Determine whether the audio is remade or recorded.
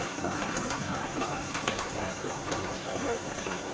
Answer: remade